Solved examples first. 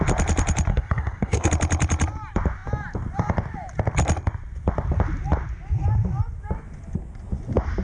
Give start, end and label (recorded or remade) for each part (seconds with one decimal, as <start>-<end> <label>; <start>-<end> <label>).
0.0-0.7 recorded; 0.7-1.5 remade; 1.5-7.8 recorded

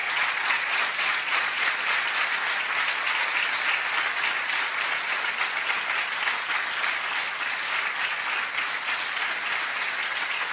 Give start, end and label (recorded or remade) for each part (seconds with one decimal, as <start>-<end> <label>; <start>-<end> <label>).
0.0-1.7 remade; 1.7-10.5 recorded

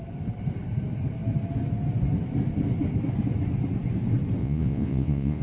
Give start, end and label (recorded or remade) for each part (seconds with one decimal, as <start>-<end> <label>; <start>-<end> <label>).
0.0-4.4 recorded; 4.4-5.4 remade

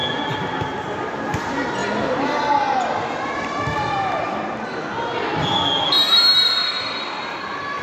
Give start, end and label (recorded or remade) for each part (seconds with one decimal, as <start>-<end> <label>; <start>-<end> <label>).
0.0-7.8 recorded

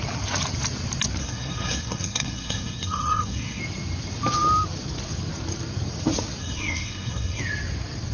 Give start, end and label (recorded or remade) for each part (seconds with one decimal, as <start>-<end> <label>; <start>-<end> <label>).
0.0-1.2 recorded; 1.2-3.6 remade; 3.6-6.4 recorded; 6.4-7.4 remade; 7.4-8.1 recorded

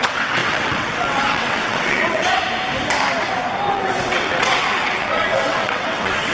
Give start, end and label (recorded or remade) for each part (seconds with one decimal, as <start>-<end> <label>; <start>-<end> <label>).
0.0-2.4 remade; 2.4-3.7 recorded; 3.7-6.3 remade

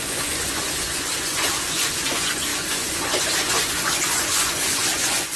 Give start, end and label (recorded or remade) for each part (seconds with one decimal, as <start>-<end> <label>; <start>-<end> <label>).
0.0-5.4 remade

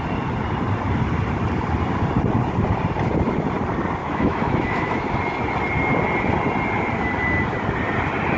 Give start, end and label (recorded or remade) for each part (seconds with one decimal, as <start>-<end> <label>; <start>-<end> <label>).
0.0-4.0 recorded; 4.0-5.0 remade; 5.0-8.4 recorded